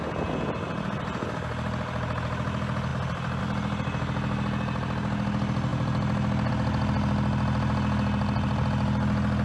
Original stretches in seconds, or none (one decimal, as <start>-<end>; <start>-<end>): 0.0-9.4